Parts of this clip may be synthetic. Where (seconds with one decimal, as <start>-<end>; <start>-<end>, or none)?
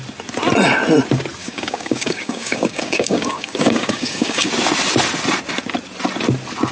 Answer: 1.4-4.5